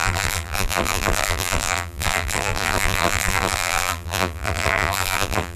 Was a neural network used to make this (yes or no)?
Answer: yes